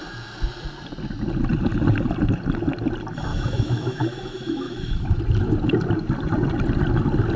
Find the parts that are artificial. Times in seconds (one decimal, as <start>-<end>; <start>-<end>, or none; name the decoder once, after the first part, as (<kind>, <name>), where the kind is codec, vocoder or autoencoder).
3.3-5.2 (autoencoder, DAC-VAE)

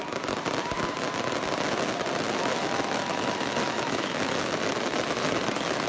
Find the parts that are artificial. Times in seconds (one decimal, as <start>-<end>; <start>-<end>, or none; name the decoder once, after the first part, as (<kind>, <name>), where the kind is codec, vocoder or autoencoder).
2.4-5.9 (autoencoder, DAC-VAE)

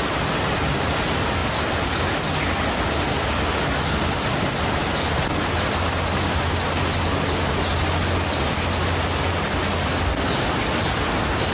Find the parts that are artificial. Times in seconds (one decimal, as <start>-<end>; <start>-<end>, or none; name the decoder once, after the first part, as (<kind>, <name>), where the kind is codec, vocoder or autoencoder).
none

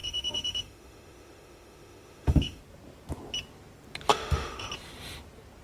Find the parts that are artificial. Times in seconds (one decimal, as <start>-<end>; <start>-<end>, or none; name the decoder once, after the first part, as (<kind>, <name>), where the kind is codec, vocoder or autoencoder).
0.0-2.6 (autoencoder, DAC-VAE); 4.1-4.7

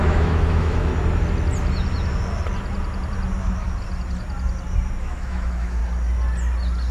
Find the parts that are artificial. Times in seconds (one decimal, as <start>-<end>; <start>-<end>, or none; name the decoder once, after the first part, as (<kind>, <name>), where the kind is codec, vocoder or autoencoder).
0.0-0.9 (autoencoder, DAC-VAE); 5.0-5.8